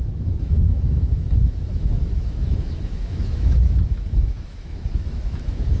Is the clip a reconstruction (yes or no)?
yes